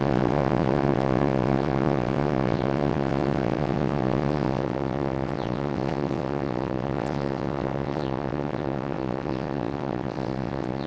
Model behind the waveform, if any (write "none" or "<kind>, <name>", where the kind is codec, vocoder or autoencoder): vocoder, WaveNeXt